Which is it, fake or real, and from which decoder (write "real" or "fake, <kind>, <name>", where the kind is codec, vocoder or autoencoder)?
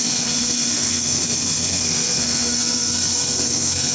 fake, codec, SNAC